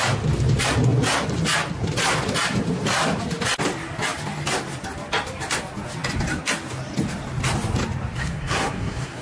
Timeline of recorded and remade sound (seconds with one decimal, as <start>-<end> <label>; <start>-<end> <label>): 0.0-8.2 recorded; 8.2-9.2 remade